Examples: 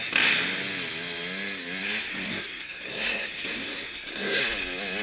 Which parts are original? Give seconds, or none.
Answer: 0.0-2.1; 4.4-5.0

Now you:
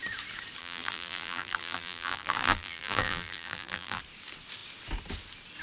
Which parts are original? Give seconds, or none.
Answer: 0.0-0.6; 4.0-5.6

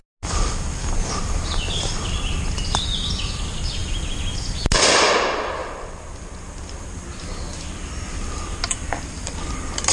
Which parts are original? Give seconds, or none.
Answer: 0.0-9.9

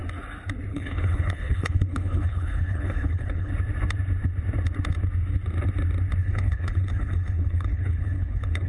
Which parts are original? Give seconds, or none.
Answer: 0.0-0.7; 3.5-6.2

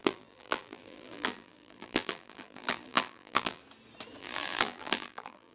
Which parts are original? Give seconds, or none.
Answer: 3.6-4.2

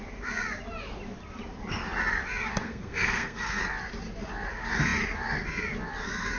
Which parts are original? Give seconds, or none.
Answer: 0.0-2.6; 3.6-6.4

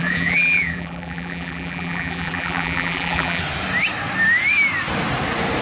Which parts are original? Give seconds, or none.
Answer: 3.4-5.6